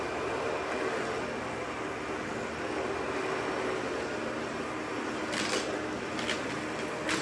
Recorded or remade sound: recorded